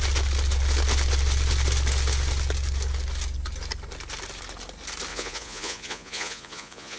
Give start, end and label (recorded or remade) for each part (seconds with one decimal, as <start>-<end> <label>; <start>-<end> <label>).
0.0-5.1 recorded; 5.1-7.0 remade